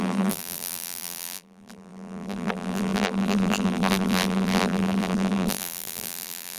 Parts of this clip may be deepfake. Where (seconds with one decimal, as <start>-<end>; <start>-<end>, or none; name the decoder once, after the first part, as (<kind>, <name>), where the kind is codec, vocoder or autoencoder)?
0.0-6.6 (vocoder, BigVGAN v2)